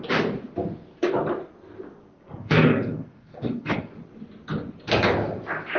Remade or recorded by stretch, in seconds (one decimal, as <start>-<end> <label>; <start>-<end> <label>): 0.0-2.1 recorded; 2.1-3.9 remade; 3.9-5.8 recorded